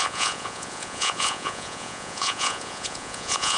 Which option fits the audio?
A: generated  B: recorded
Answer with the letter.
A